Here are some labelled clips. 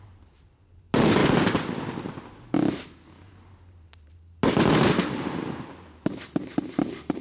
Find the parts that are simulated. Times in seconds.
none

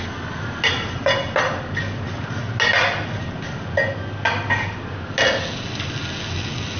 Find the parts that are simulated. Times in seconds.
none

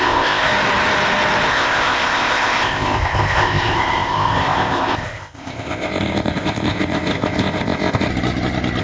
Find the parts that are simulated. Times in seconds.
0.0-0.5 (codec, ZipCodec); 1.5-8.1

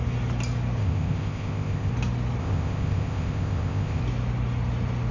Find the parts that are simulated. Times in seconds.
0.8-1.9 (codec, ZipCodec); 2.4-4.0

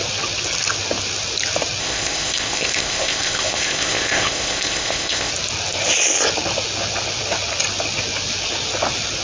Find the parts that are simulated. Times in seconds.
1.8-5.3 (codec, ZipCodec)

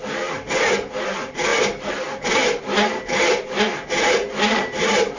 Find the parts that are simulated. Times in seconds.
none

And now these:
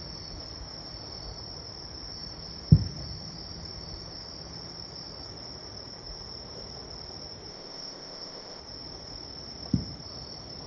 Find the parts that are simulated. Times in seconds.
7.5-8.6 (codec, ZipCodec)